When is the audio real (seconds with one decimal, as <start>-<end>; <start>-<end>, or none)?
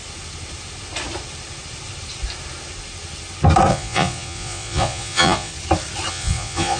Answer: 0.0-3.7; 5.5-6.1